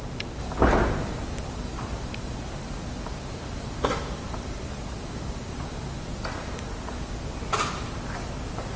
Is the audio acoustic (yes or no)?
yes